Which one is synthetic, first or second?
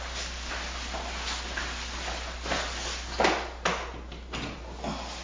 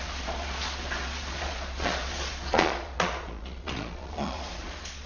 second